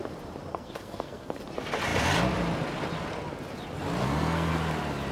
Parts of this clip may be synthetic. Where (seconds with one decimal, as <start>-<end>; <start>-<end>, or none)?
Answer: 0.5-1.4; 4.0-4.5